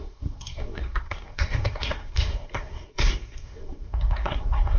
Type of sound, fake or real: fake